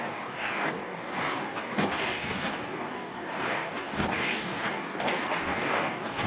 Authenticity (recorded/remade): remade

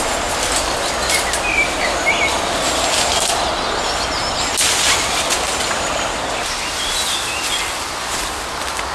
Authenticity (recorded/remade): recorded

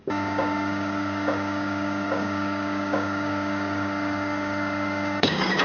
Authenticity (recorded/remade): remade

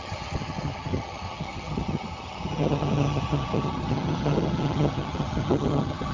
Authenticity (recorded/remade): remade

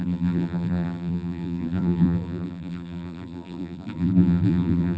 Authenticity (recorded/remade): remade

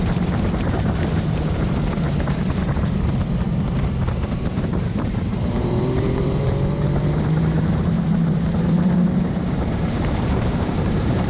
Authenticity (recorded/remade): remade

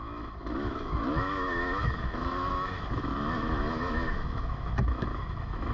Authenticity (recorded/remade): remade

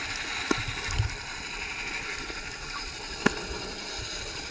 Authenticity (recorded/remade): recorded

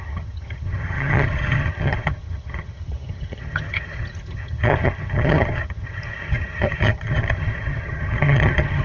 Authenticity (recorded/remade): remade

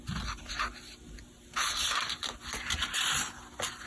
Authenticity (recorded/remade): recorded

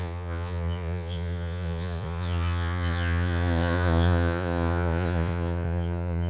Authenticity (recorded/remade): remade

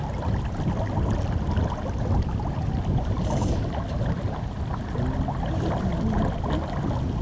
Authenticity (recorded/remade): recorded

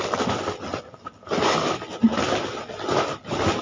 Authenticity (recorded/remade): recorded